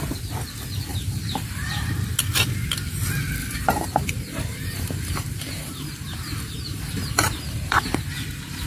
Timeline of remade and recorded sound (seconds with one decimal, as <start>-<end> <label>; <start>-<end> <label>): 0.0-0.9 recorded; 0.9-1.9 remade; 1.9-3.4 recorded; 3.4-8.1 remade; 8.1-8.7 recorded